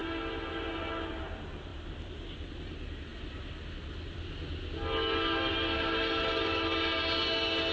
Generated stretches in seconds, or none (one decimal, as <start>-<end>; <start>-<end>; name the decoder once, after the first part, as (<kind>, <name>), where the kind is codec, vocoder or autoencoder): none